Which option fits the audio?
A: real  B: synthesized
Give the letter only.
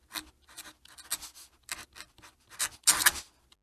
A